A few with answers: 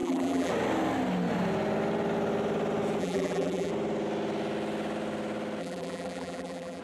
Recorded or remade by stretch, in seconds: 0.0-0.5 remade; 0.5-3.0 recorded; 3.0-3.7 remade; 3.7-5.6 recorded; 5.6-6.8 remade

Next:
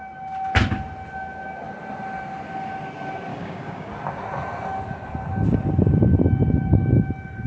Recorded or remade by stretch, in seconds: 0.0-3.3 recorded; 3.3-3.9 remade; 3.9-7.5 recorded

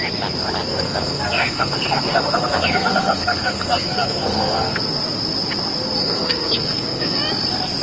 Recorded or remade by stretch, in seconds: 0.0-0.7 recorded; 0.7-4.8 remade; 4.8-6.0 recorded; 6.0-7.2 remade; 7.2-7.8 recorded

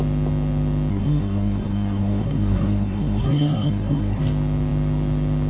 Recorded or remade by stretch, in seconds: 0.0-0.9 recorded; 0.9-4.2 remade; 4.2-5.5 recorded

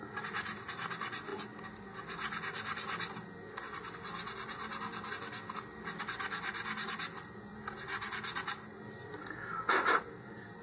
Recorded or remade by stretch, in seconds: 0.0-10.6 recorded

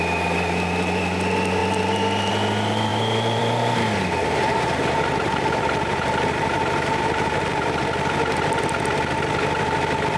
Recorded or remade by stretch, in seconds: 0.0-4.2 recorded; 4.2-7.8 remade; 7.8-10.2 recorded

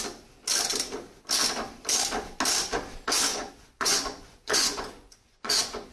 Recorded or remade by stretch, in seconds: 0.0-3.3 recorded; 3.3-5.9 remade

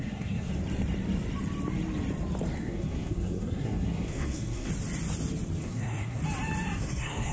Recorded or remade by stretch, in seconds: 0.0-0.5 remade; 0.5-2.6 recorded; 2.6-4.7 remade; 4.7-5.6 recorded; 5.6-6.2 remade; 6.2-6.8 recorded; 6.8-7.3 remade